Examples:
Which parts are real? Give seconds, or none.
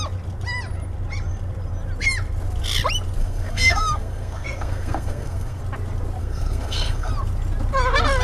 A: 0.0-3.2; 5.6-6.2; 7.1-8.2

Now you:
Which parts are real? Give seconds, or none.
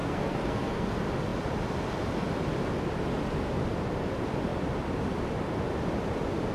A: 0.9-6.5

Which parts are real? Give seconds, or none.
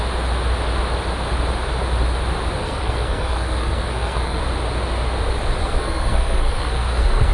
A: 0.0-2.6; 4.4-5.6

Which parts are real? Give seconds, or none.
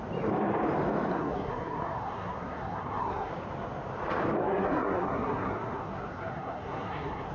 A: 0.0-1.1; 3.3-4.4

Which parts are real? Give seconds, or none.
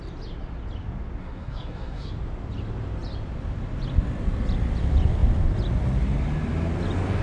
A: 0.0-1.2; 2.1-7.2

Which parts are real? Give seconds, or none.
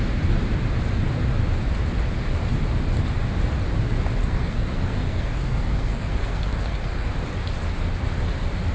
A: 0.0-4.2; 7.1-8.7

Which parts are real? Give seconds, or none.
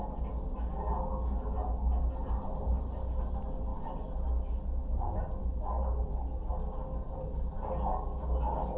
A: 0.0-8.8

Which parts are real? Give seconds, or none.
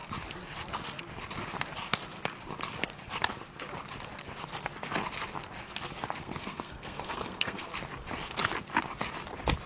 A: 0.0-6.2; 7.7-9.7